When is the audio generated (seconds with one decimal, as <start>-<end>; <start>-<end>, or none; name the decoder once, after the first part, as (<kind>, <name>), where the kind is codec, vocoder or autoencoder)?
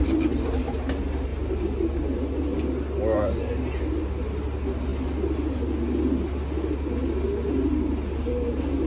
none